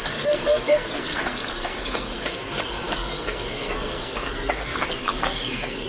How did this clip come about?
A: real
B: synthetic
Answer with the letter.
B